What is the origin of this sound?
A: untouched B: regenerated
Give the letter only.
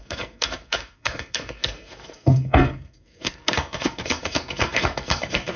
B